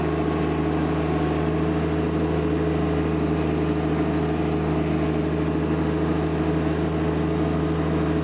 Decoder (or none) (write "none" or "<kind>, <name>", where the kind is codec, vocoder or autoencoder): none